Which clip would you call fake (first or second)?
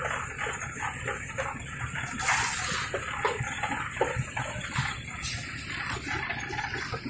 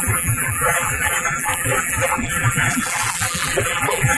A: second